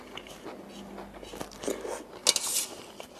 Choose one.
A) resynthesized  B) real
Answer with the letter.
B